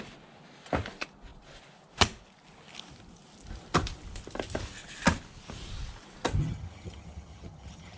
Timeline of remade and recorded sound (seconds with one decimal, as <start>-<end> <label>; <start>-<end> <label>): 0.0-6.4 recorded; 6.4-8.0 remade